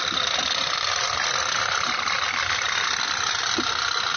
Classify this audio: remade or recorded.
recorded